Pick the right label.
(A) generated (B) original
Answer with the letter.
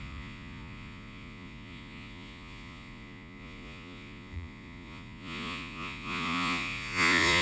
A